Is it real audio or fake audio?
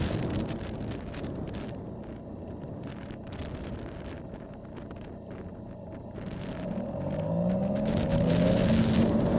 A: real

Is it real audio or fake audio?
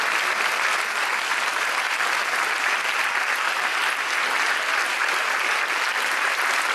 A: real